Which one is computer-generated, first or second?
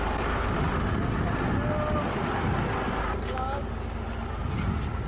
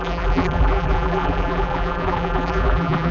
second